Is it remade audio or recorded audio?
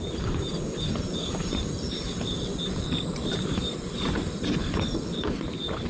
remade